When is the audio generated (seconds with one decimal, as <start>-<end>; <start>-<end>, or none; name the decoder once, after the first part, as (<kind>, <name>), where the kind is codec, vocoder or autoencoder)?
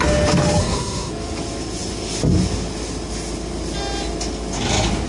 0.6-1.1 (codec, SNAC)